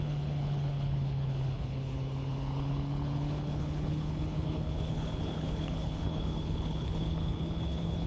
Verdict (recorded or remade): remade